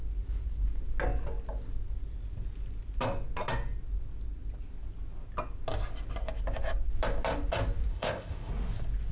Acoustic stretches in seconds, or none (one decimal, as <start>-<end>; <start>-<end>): 0.0-7.9; 8.5-9.1